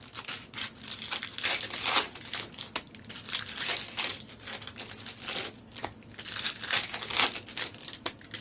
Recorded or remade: recorded